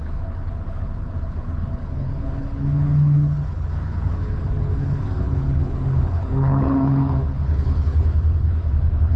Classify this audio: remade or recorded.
remade